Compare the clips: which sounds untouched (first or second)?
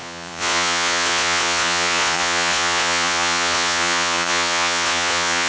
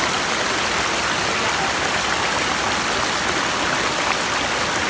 second